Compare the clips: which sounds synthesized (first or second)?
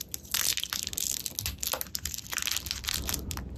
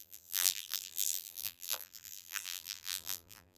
second